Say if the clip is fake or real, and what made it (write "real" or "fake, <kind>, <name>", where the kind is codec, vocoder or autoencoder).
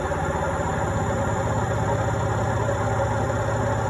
fake, vocoder, BigVGAN v2